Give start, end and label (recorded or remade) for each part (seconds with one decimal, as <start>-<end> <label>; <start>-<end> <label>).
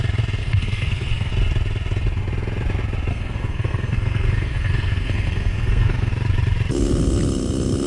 0.0-0.4 recorded; 0.4-1.3 remade; 1.3-3.1 recorded; 3.1-6.1 remade; 6.1-7.9 recorded